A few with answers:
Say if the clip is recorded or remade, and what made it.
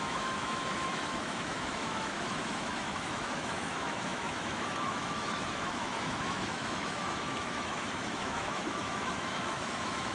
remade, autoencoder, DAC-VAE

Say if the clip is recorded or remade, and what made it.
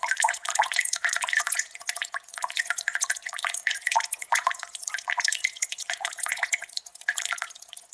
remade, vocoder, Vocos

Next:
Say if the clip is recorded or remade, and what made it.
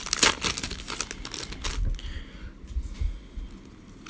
recorded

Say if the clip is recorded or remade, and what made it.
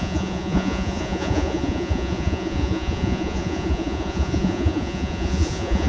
remade, vocoder, Vocos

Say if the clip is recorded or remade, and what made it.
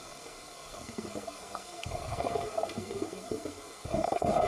remade, codec, SNAC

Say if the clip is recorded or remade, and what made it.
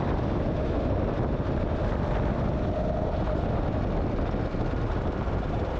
recorded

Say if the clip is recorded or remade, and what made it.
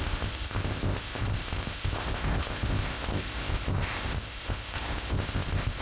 remade, codec, ZipCodec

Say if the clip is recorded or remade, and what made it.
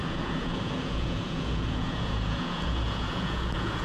remade, vocoder, Vocos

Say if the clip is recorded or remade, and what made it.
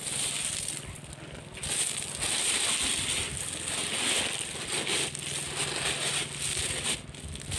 recorded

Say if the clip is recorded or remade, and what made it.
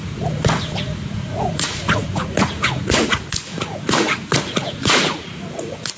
remade, vocoder, Vocos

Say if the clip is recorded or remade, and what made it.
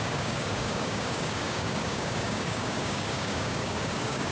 remade, codec, DAC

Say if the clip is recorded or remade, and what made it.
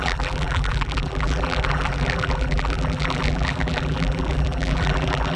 remade, vocoder, BigVGAN v2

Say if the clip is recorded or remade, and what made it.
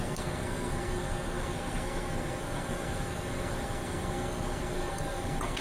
remade, codec, SNAC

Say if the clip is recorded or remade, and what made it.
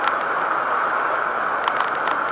recorded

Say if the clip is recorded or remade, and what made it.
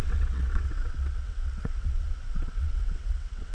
remade, vocoder, WaveNeXt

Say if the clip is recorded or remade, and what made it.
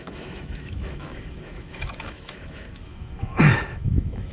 remade, autoencoder, DAC-VAE